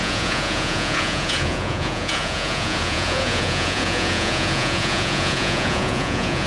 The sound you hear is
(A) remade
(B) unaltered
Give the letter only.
A